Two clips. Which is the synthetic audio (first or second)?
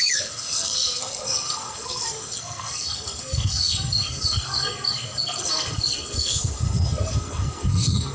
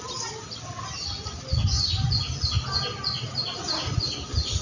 first